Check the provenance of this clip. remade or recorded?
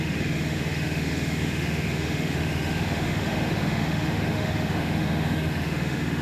remade